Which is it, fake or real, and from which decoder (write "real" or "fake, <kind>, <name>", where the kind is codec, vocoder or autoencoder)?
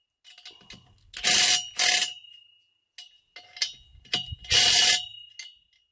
real